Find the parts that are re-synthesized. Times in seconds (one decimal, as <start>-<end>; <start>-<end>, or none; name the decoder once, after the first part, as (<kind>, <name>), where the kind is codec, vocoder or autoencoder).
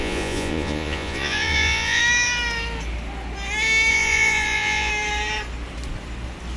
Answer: 0.0-2.0 (vocoder, Vocos); 3.9-4.9